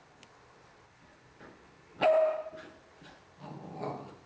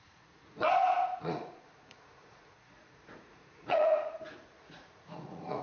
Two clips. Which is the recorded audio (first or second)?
first